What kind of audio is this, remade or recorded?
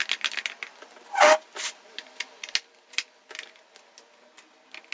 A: recorded